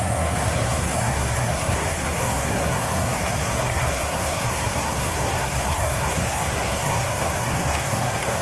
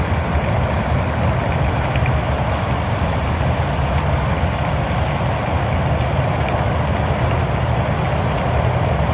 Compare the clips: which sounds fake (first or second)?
first